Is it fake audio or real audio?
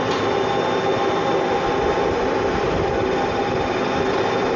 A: real